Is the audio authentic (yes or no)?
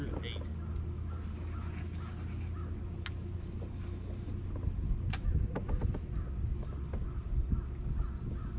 yes